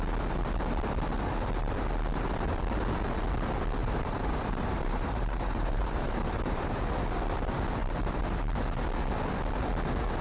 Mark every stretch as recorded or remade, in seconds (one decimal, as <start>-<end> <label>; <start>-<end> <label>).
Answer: 0.0-3.8 recorded; 3.8-6.7 remade; 6.7-7.8 recorded; 7.8-8.4 remade; 8.4-10.2 recorded